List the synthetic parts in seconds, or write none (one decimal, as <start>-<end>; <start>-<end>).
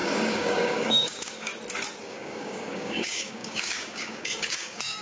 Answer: 0.0-1.5; 2.0-5.0